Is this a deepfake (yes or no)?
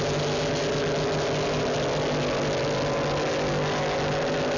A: no